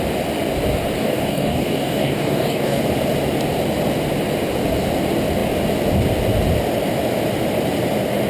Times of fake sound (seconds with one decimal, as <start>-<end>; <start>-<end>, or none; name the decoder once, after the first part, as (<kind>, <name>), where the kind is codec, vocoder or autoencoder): 1.0-2.8 (codec, DAC)